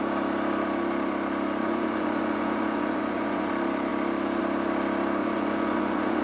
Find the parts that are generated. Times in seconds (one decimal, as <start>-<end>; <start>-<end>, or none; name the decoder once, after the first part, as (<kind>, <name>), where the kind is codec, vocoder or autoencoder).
1.6-3.5 (vocoder, Vocos); 5.2-6.2